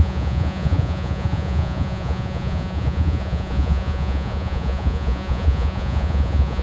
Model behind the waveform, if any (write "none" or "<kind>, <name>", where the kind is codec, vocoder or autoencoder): vocoder, Vocos